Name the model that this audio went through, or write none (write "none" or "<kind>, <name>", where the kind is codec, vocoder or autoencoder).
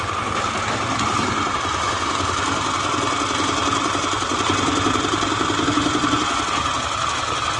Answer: none